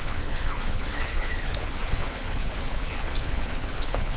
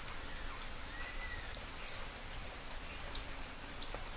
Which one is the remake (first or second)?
first